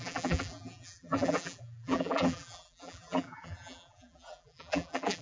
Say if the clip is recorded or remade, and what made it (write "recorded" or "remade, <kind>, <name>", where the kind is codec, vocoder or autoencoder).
remade, vocoder, BigVGAN v2